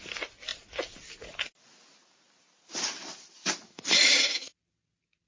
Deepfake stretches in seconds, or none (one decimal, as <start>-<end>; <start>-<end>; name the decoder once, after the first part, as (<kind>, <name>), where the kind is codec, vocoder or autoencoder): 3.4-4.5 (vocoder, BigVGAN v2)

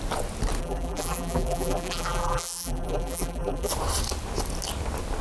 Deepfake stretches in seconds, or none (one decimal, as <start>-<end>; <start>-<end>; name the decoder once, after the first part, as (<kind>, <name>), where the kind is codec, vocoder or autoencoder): 0.6-3.7 (vocoder, BigVGAN v2)

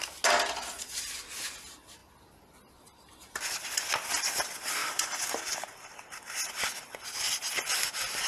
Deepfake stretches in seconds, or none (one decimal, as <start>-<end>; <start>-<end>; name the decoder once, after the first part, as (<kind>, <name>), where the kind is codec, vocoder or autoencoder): 4.8-6.8 (vocoder, BigVGAN v2)

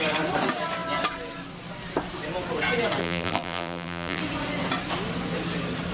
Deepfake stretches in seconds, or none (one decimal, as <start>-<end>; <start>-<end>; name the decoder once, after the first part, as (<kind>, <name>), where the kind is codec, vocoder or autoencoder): 3.0-4.2 (vocoder, BigVGAN v2)

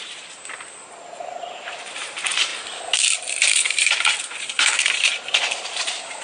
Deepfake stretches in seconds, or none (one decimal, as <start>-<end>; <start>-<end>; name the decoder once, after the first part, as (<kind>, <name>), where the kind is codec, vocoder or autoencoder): 0.0-2.5 (vocoder, BigVGAN v2); 3.5-6.2